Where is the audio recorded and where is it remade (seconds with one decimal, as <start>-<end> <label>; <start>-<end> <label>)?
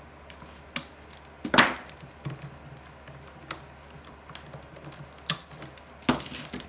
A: 0.0-6.7 recorded